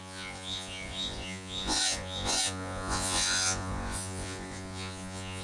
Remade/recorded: remade